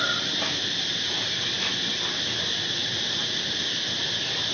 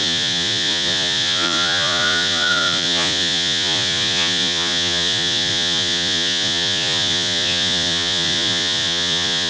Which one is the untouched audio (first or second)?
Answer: first